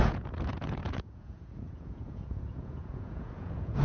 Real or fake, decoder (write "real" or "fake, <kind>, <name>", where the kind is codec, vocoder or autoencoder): fake, vocoder, Vocos